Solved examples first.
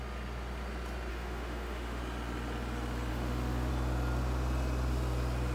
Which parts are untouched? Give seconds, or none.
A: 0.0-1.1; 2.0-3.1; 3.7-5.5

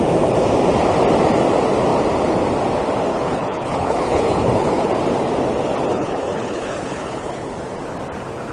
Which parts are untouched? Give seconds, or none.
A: 0.0-3.1; 4.9-5.9; 7.5-8.5